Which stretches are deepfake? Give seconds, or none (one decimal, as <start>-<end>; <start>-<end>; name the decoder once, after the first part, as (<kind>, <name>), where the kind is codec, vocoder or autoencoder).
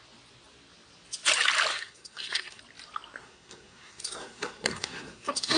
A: 1.7-2.6 (codec, SNAC); 3.2-5.6